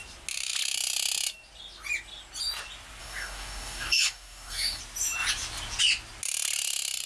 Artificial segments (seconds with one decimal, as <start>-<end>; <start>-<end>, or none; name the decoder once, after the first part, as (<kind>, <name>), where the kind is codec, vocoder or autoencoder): 3.0-4.8 (codec, DAC)